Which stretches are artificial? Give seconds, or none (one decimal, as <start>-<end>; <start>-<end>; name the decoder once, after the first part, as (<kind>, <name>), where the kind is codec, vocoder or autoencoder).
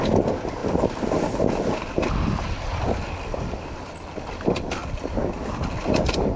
0.6-4.2 (vocoder, BigVGAN v2)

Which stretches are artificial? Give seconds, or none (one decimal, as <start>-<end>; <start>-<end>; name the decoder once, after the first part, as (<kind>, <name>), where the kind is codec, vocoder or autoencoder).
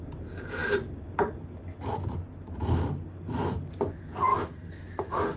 4.3-5.4 (autoencoder, DAC-VAE)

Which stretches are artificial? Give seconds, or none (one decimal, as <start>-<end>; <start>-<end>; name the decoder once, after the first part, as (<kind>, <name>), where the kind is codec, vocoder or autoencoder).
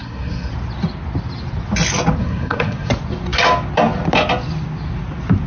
0.0-0.5 (codec, SNAC); 2.2-2.9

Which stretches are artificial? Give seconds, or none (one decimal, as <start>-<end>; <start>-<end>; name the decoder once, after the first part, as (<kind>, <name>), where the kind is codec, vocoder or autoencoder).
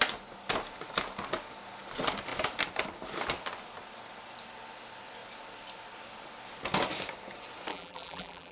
7.7-8.5 (vocoder, BigVGAN v2)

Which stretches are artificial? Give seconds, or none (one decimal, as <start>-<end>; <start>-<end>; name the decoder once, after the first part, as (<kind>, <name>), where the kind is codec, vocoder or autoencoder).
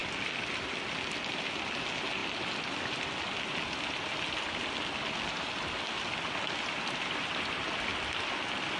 none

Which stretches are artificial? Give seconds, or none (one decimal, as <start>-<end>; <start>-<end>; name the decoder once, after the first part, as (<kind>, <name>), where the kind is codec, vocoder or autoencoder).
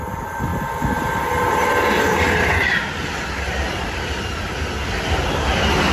none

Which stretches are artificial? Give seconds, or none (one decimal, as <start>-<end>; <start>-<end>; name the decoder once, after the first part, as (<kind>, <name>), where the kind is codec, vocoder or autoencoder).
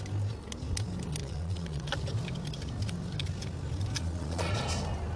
1.2-1.9 (vocoder, Vocos); 4.0-4.5